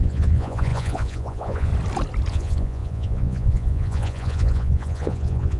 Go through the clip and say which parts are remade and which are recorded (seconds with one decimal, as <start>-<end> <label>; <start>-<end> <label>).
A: 0.0-1.7 remade; 1.7-2.3 recorded; 2.3-5.6 remade